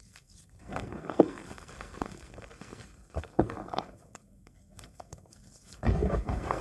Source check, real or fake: fake